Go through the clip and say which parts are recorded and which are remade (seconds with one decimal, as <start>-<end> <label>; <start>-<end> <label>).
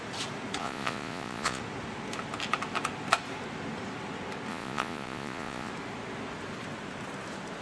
0.0-0.6 recorded; 0.6-1.6 remade; 1.6-4.5 recorded; 4.5-5.7 remade; 5.7-7.6 recorded